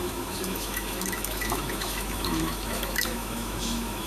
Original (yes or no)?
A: no